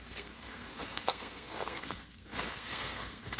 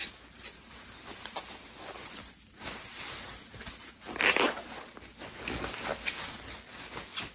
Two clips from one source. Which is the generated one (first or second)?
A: first